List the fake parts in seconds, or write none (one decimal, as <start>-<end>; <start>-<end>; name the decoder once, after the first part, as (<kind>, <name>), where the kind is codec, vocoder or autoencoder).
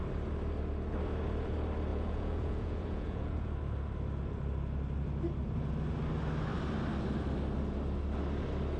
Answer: 1.9-3.5 (vocoder, Vocos)